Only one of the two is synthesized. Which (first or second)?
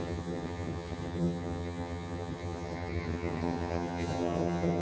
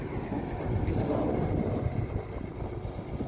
first